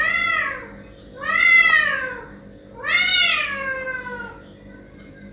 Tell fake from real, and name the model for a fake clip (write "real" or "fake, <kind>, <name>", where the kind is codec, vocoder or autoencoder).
real